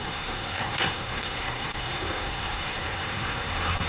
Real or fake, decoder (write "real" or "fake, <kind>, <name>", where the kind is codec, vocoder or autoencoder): fake, codec, SNAC